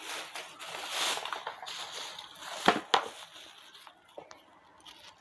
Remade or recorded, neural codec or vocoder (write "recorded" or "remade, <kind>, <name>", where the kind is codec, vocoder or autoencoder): recorded